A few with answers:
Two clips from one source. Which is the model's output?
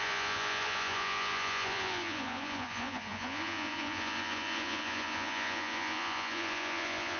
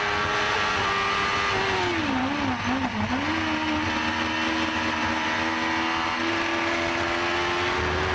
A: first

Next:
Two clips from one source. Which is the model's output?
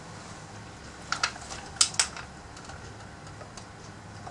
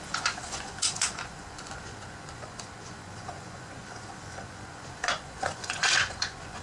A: second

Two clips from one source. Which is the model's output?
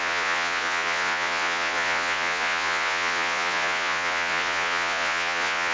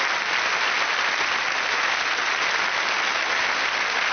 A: first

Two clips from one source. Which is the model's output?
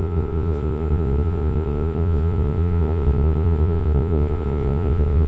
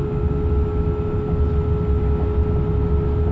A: first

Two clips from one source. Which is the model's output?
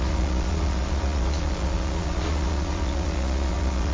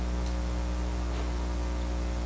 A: first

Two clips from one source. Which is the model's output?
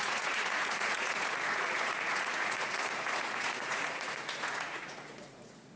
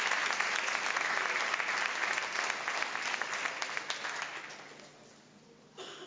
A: first